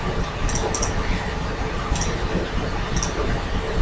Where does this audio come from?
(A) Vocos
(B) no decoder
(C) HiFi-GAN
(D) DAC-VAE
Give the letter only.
B